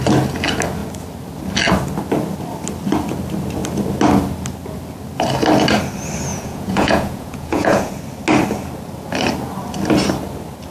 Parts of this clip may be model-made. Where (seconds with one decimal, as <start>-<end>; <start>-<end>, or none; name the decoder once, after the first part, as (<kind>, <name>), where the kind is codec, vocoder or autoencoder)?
6.3-7.9 (vocoder, Vocos)